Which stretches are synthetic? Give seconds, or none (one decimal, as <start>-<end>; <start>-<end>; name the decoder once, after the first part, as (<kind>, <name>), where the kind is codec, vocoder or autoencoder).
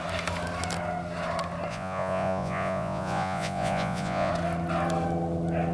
1.7-4.3 (vocoder, Vocos)